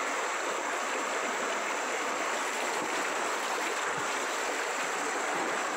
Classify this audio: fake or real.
real